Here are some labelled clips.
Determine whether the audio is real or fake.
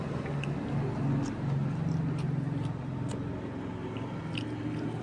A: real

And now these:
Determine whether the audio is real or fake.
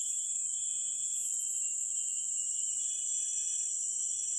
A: real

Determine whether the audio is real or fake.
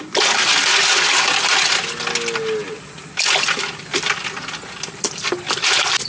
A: real